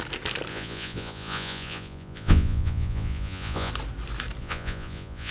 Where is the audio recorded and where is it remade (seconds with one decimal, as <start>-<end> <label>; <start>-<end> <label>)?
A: 0.0-0.5 recorded; 0.5-3.7 remade; 3.7-4.4 recorded; 4.4-5.3 remade